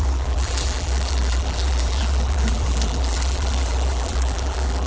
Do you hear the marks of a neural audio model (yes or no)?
yes